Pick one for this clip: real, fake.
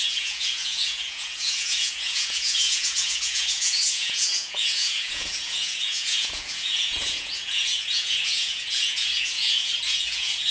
fake